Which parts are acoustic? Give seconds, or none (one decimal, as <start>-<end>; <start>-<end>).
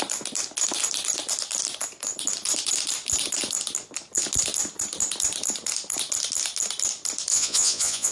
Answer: 0.0-7.3